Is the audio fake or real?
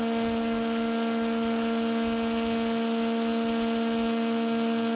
real